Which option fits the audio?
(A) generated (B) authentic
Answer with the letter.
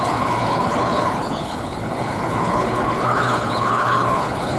A